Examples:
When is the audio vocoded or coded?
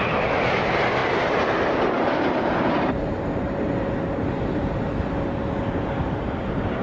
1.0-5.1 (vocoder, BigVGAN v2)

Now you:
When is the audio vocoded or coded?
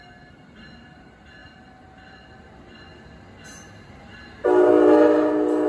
none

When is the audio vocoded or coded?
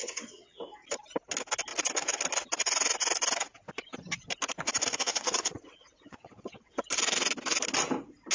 0.0-0.6 (vocoder, WaveNeXt); 5.1-6.8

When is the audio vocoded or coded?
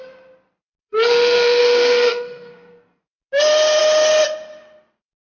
0.9-3.0 (codec, SNAC)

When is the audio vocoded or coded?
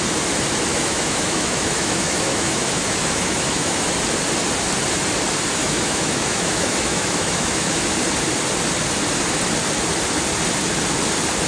0.7-3.9 (autoencoder, DAC-VAE); 5.6-7.8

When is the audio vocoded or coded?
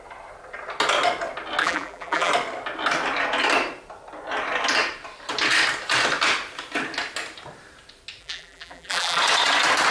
1.6-2.3 (vocoder, BigVGAN v2); 8.2-9.2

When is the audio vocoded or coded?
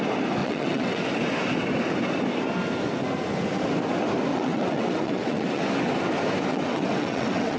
0.4-1.0 (vocoder, WaveNeXt); 4.3-5.6; 6.5-7.6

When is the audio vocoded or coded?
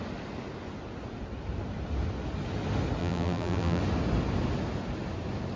3.0-3.8 (vocoder, BigVGAN v2)